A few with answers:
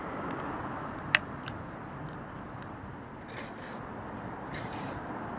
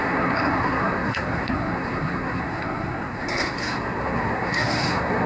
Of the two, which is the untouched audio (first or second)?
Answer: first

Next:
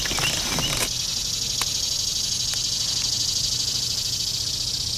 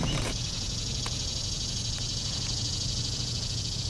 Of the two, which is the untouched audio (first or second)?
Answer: first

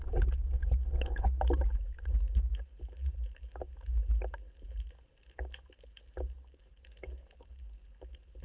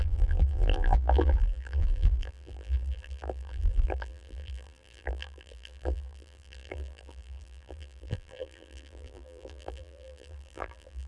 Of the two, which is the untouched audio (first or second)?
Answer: first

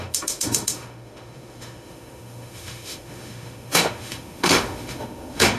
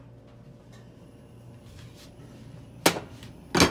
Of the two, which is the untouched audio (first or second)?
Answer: second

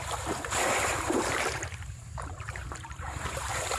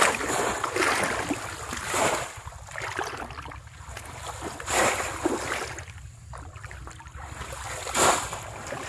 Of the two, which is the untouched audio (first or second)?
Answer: second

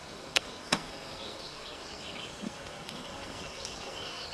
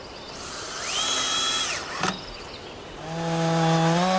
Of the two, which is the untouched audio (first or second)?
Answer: second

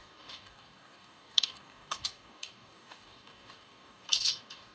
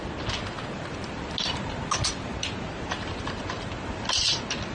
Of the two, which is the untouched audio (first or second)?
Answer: second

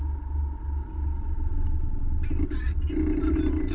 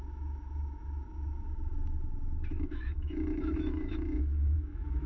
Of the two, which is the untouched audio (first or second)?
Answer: first